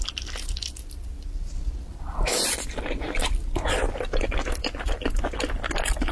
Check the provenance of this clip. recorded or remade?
recorded